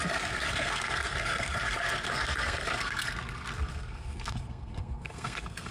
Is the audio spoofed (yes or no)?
yes